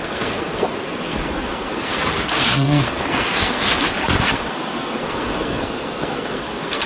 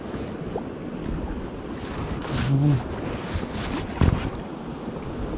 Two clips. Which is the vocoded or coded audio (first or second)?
first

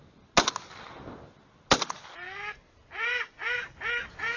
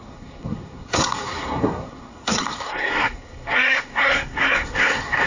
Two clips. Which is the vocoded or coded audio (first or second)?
second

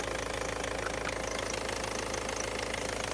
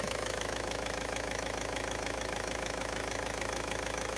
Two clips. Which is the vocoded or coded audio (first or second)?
second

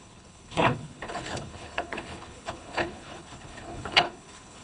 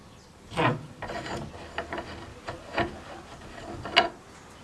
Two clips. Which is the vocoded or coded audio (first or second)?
first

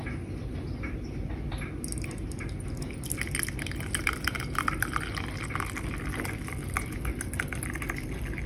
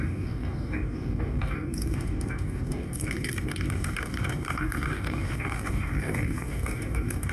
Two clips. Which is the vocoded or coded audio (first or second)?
second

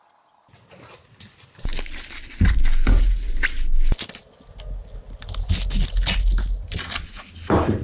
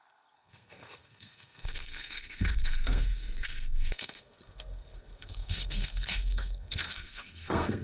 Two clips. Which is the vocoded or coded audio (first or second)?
second